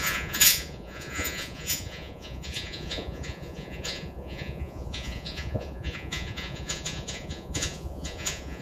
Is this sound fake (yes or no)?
yes